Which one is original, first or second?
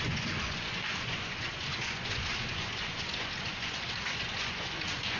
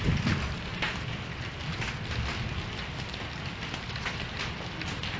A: second